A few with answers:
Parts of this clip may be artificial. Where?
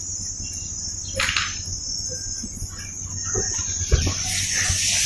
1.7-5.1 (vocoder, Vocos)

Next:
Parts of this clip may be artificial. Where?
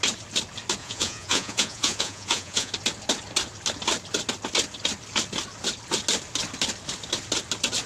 0.8-2.7 (vocoder, Vocos)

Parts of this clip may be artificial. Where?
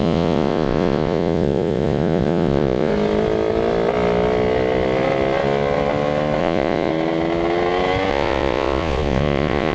0.0-2.9 (vocoder, Vocos); 6.4-6.9; 8.1-9.7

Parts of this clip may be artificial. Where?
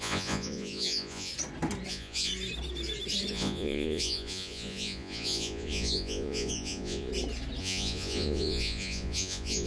0.0-1.3 (vocoder, Vocos); 1.9-2.3; 3.3-7.1; 7.6-9.7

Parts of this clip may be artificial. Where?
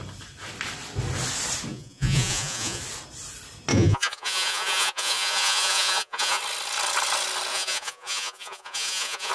1.7-2.8 (vocoder, Vocos); 3.7-6.4; 7.5-9.3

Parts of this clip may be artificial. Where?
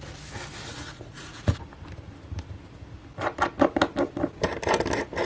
0.7-1.6 (vocoder, Vocos)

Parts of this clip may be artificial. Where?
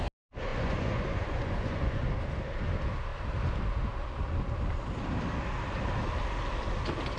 0.5-2.1 (vocoder, Vocos)